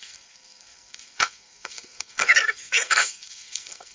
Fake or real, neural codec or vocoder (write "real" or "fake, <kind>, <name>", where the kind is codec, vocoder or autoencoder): fake, codec, SNAC